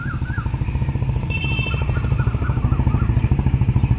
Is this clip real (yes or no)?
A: no